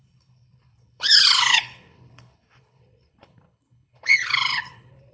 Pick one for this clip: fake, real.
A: fake